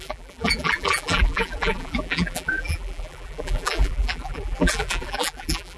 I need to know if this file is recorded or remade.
remade